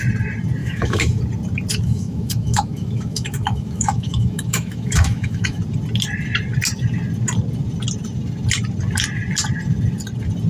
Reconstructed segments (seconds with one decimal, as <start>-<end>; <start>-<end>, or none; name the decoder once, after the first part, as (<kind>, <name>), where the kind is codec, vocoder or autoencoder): 0.6-1.2 (autoencoder, DAC-VAE); 1.7-5.6